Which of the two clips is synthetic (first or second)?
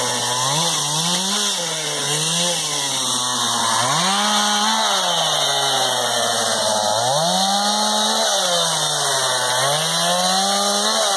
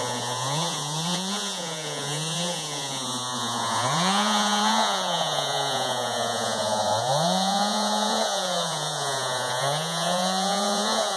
second